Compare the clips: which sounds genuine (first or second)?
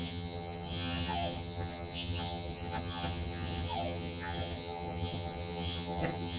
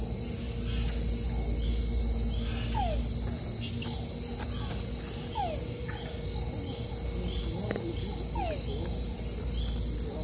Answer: second